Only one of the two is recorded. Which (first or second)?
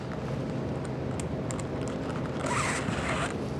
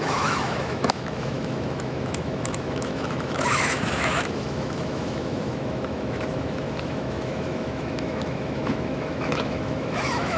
first